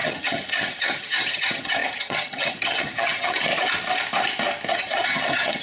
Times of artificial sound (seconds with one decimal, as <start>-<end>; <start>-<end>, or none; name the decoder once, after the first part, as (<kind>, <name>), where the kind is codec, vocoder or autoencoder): 0.0-3.5 (vocoder, HiFi-GAN); 4.7-5.6